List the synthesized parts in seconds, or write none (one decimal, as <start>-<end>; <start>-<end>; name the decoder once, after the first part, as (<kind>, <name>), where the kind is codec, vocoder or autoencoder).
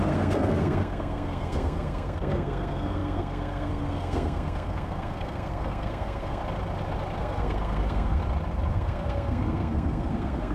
0.0-6.4 (codec, SNAC); 7.2-8.2; 8.7-10.5